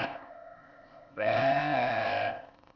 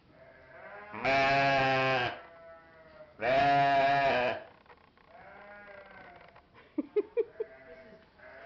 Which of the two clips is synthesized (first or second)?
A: first